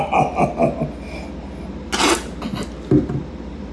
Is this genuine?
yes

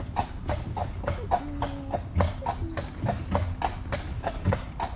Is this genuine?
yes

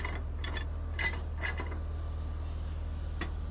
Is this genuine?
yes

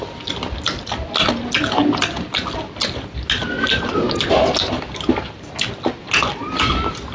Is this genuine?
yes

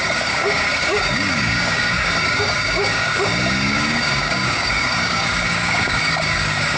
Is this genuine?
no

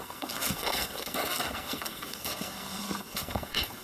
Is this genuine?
no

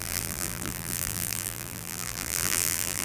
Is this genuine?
no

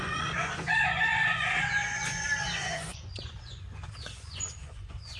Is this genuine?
no